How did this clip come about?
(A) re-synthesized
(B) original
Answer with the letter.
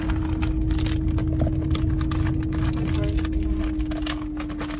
B